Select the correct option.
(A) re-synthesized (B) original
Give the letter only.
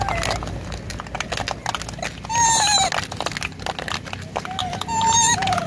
B